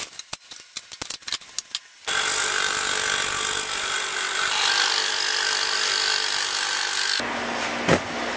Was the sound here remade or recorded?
recorded